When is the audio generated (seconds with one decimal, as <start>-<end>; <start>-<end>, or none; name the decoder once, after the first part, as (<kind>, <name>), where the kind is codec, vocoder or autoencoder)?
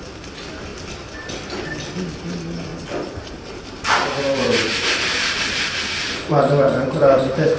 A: 0.0-0.7 (vocoder, BigVGAN v2); 2.2-2.7; 3.2-7.6